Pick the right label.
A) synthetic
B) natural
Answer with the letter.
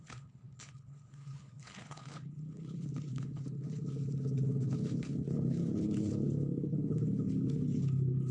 A